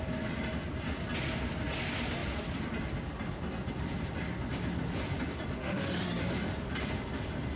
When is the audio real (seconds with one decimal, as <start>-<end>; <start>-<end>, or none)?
0.0-5.6; 6.2-7.6